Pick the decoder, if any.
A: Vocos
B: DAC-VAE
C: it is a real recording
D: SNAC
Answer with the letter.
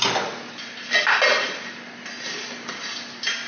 C